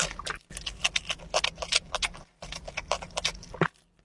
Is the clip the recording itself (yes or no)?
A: yes